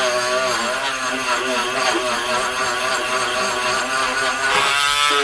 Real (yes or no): yes